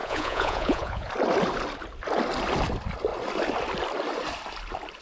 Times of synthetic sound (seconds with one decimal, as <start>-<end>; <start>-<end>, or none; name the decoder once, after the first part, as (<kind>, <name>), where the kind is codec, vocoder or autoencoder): 0.0-1.1 (vocoder, Vocos)

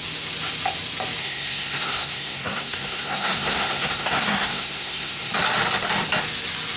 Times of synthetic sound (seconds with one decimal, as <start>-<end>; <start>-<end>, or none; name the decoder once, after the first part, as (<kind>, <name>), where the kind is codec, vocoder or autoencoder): 1.2-5.3 (codec, SNAC)

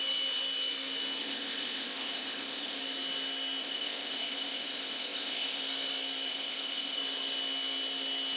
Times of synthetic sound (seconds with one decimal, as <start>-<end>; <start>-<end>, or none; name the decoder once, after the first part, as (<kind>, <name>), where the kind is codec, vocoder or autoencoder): 1.2-2.8 (codec, ZipCodec); 3.6-5.6; 6.3-7.0

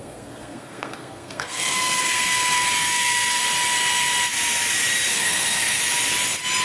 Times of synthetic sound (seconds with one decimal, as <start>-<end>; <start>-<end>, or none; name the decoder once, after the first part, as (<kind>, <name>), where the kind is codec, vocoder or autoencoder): 0.0-3.4 (codec, SNAC); 5.1-5.8

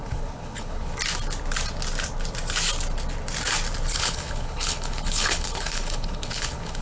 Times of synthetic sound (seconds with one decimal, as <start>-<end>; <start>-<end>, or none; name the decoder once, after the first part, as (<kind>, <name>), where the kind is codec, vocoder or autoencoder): 0.0-0.9 (codec, HILCodec); 3.9-6.8

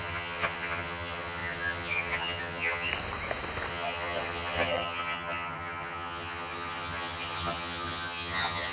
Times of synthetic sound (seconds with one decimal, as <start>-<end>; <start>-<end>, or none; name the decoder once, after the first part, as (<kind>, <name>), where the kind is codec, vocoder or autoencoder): 0.0-2.9 (vocoder, HiFi-GAN); 3.7-8.7